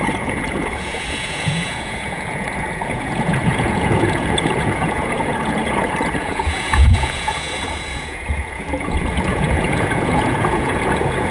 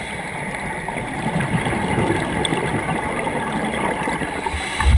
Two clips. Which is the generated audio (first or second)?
first